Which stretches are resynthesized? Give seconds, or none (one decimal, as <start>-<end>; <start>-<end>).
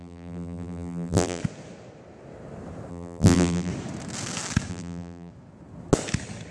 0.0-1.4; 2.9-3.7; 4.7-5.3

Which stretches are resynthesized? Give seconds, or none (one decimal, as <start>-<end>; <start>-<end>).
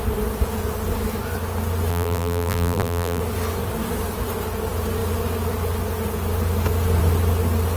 1.9-3.2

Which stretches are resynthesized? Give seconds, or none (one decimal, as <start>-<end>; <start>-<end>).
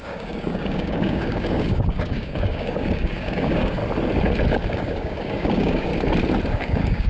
0.0-3.8; 4.5-5.9; 6.5-7.1